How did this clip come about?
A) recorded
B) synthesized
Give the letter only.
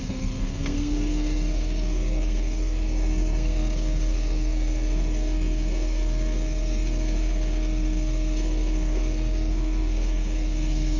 B